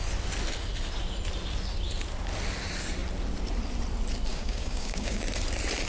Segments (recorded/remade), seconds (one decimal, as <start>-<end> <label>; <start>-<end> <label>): 0.0-4.3 recorded; 4.3-5.2 remade; 5.2-5.9 recorded